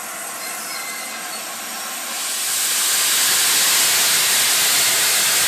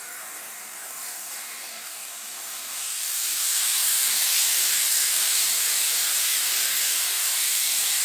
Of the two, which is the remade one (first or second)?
second